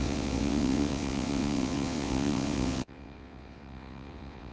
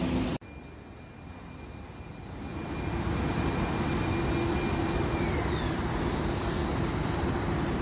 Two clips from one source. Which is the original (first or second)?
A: second